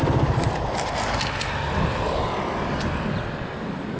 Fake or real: real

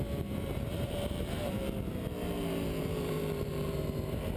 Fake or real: fake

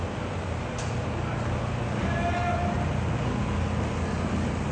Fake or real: real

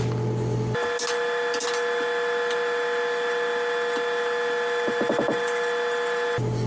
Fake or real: real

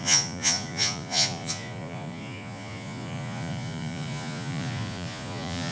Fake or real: fake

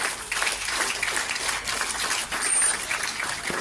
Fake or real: real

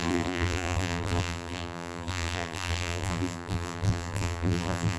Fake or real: fake